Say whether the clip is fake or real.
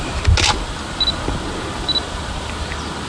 real